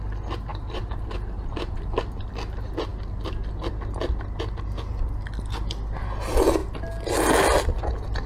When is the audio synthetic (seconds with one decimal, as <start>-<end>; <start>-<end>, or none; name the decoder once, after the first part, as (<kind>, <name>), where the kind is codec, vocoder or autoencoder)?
0.5-2.3 (vocoder, BigVGAN v2)